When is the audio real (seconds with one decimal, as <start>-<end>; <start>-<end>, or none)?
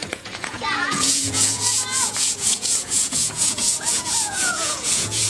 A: none